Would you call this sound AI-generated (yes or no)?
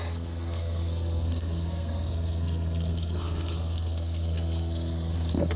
yes